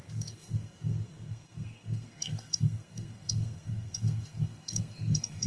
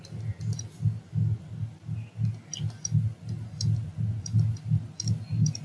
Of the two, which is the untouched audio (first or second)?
second